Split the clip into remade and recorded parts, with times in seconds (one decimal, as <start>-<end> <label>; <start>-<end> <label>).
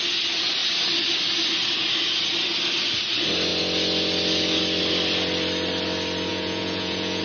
0.0-6.3 recorded; 6.3-7.2 remade